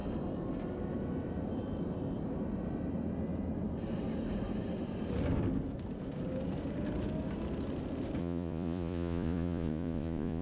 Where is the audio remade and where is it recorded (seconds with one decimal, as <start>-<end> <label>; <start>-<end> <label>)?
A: 0.0-8.2 recorded; 8.2-10.4 remade